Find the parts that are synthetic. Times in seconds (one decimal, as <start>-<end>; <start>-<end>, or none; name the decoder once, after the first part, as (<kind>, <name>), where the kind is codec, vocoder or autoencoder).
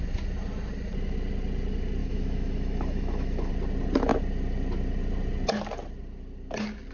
2.0-3.5 (autoencoder, DAC-VAE)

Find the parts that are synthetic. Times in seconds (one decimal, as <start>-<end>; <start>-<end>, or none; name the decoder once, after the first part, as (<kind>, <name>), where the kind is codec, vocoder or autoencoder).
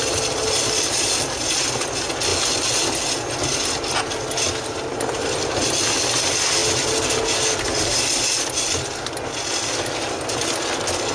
none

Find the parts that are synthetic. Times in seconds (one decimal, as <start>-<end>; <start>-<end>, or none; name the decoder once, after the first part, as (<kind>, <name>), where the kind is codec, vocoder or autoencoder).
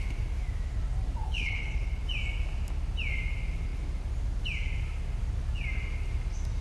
1.2-2.0 (codec, HILCodec)